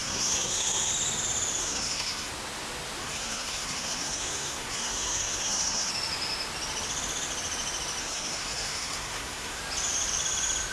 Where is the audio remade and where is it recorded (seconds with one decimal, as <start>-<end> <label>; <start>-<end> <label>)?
0.0-0.9 remade; 0.9-1.6 recorded; 1.6-2.3 remade; 2.3-3.0 recorded; 3.0-5.9 remade; 5.9-8.0 recorded; 8.0-9.6 remade; 9.6-10.7 recorded